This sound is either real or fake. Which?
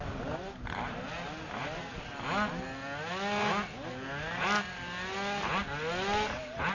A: real